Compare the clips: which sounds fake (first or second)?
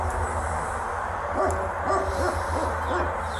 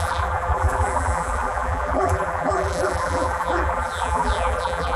second